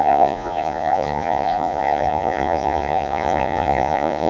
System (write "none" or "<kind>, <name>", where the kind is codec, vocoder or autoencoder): vocoder, Vocos